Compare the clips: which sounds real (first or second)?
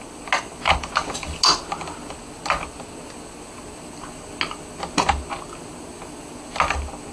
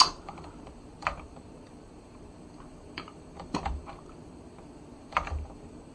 first